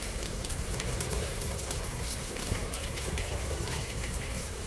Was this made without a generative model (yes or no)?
no